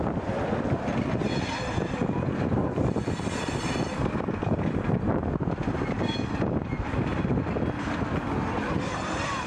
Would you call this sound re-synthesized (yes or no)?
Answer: no